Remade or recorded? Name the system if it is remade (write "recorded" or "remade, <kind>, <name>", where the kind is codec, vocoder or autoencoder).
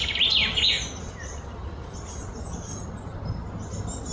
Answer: recorded